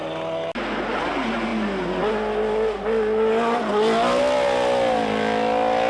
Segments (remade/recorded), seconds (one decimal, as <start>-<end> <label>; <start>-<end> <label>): 0.0-5.9 recorded